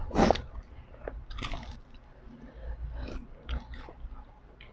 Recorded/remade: recorded